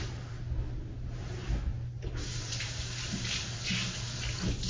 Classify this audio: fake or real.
real